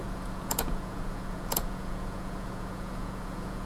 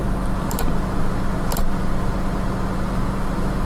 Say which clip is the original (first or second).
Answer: second